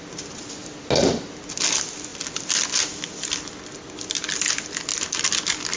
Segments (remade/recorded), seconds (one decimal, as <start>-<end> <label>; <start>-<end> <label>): 0.0-5.8 recorded